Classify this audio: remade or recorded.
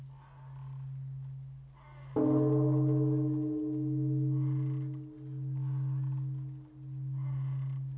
recorded